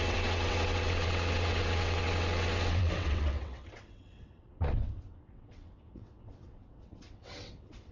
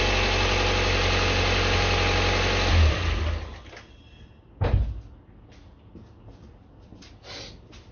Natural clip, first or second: second